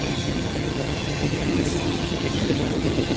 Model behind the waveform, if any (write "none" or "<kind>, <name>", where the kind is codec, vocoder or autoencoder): vocoder, HiFi-GAN